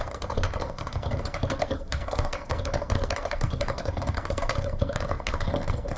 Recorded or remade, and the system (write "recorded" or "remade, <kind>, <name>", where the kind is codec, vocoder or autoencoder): remade, codec, SNAC